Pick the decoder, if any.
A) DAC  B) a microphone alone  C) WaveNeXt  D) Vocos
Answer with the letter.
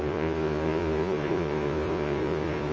D